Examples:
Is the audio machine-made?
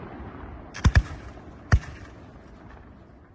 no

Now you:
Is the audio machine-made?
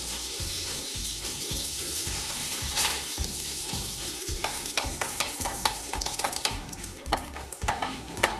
yes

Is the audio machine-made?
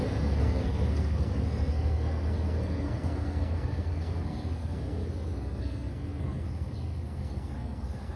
yes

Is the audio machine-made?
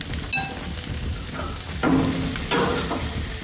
no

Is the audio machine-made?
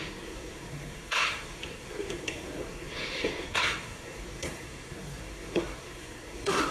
yes